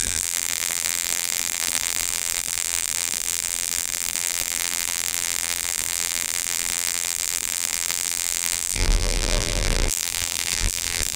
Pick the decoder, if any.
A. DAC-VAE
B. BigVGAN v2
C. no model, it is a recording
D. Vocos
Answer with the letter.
B